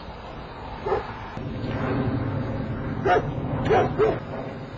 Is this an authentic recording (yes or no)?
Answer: yes